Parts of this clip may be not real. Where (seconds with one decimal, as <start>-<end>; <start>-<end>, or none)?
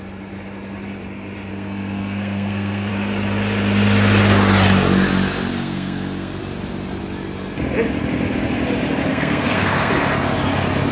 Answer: 1.5-2.9; 5.5-6.4; 9.1-9.9